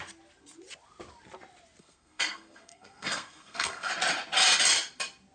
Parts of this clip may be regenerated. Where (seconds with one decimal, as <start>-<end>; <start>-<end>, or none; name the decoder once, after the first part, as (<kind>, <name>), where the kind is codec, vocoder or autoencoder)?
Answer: 1.8-3.9 (codec, SNAC)